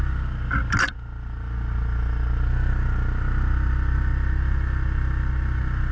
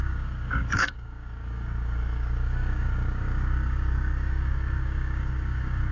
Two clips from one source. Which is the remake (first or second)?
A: second